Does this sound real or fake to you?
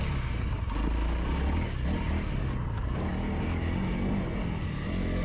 real